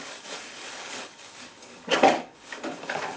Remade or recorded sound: remade